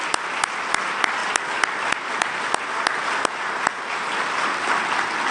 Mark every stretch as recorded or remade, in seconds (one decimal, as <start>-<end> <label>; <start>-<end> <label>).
0.0-5.3 recorded